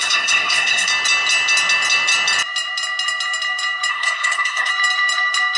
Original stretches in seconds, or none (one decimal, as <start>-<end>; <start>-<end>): 0.9-3.9; 4.7-5.6